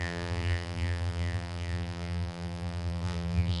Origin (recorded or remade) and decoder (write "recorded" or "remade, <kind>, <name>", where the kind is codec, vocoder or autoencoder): remade, vocoder, BigVGAN v2